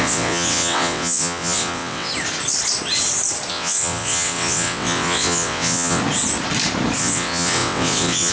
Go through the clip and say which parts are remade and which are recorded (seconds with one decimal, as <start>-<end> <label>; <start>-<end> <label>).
0.0-2.1 remade; 2.1-3.5 recorded; 3.5-6.0 remade; 6.0-7.0 recorded; 7.0-8.3 remade